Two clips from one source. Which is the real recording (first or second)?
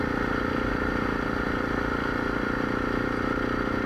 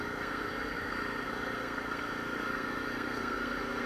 first